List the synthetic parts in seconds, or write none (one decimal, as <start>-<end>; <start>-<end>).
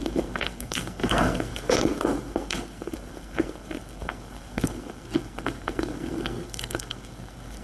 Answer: 0.0-7.6